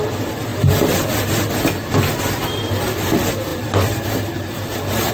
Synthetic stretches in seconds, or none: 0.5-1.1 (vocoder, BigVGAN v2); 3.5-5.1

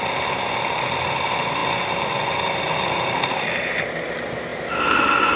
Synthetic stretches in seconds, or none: none

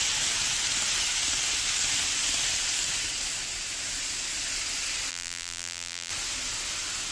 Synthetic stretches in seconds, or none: 5.1-6.1 (vocoder, BigVGAN v2)

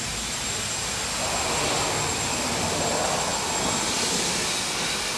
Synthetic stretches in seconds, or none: none

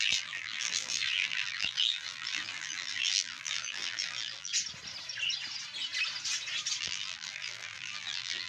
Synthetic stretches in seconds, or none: 0.0-4.5 (vocoder, BigVGAN v2); 6.8-8.5